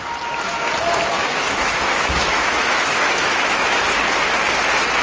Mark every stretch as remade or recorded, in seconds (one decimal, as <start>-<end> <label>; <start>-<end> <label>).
0.0-1.2 recorded; 1.2-3.8 remade; 3.8-5.0 recorded